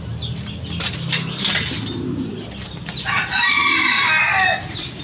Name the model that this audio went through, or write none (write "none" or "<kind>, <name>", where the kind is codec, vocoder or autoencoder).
none